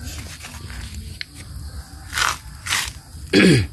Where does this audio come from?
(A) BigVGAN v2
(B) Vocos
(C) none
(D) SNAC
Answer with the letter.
C